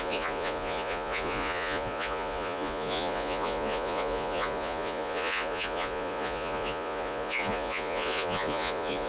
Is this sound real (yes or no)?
no